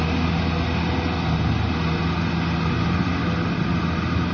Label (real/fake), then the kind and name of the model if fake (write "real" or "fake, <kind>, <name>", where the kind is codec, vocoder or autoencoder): real